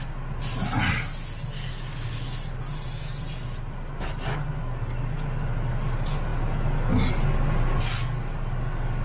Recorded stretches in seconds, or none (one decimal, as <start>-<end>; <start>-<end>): 0.0-9.0